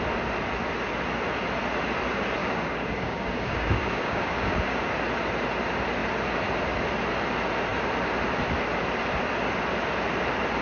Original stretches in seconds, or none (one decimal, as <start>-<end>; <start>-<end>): 0.0-2.4; 4.9-10.6